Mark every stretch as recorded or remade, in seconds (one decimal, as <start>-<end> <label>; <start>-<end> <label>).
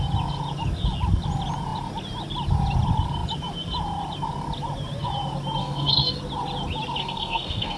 0.0-5.6 recorded; 5.6-6.2 remade; 6.2-7.0 recorded; 7.0-7.8 remade